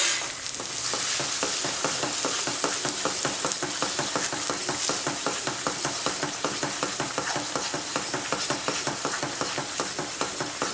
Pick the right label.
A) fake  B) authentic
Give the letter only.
B